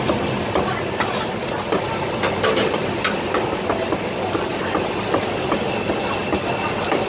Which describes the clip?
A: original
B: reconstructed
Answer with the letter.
A